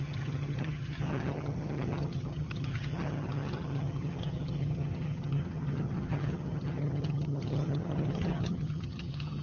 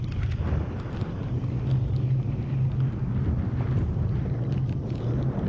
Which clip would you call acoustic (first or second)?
second